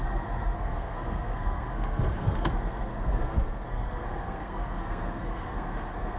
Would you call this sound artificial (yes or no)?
yes